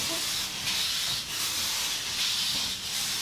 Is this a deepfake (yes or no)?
yes